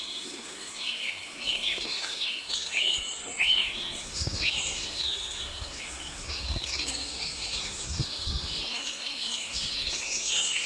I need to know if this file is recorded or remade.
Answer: remade